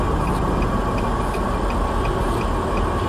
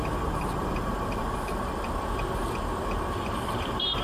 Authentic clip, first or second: first